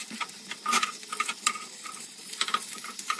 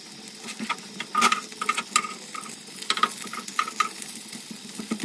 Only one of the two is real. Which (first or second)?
second